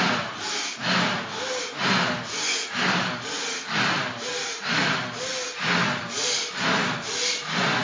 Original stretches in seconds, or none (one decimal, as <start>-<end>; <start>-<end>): 0.0-7.8